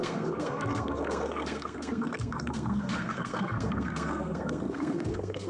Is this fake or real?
fake